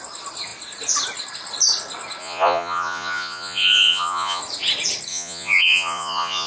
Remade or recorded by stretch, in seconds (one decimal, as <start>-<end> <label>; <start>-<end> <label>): 0.0-2.2 recorded; 2.2-4.4 remade; 4.4-5.1 recorded; 5.1-6.5 remade